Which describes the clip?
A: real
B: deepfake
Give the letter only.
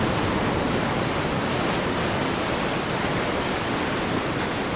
A